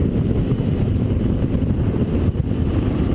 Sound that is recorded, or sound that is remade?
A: recorded